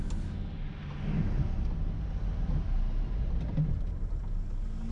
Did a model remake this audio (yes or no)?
no